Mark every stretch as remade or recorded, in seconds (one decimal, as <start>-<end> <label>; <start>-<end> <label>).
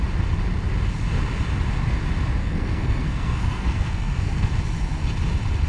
0.0-2.4 recorded; 2.4-4.5 remade; 4.5-5.7 recorded